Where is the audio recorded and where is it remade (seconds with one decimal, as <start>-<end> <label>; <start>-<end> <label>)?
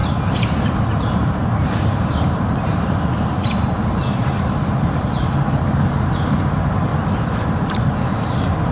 0.0-6.9 remade; 6.9-7.4 recorded; 7.4-8.7 remade